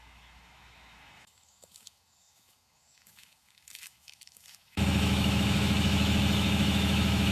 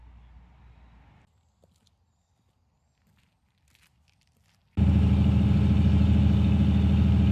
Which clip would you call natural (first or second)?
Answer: second